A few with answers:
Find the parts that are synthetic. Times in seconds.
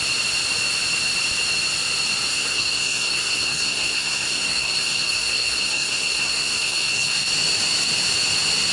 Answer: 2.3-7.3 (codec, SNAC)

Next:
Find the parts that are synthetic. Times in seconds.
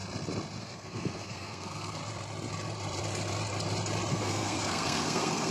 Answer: 0.6-2.0 (codec, SNAC); 4.1-5.5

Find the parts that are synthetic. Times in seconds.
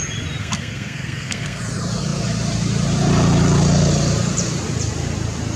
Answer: 0.4-1.6 (codec, SNAC)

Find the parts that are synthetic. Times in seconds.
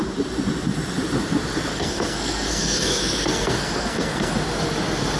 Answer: 1.7-4.3 (codec, SNAC)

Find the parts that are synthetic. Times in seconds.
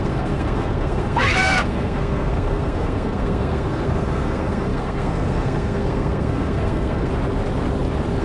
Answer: 0.0-7.1 (codec, SNAC)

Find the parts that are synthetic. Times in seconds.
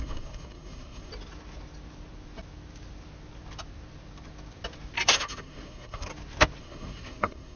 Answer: 0.0-1.1 (codec, SNAC); 5.1-6.1; 6.6-7.6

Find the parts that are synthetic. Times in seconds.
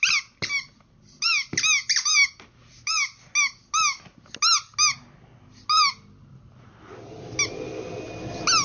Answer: none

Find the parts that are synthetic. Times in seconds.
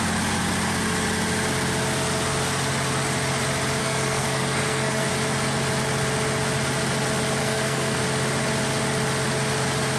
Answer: 3.8-5.1 (codec, SNAC); 7.4-8.0